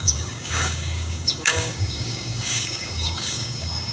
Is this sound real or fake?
fake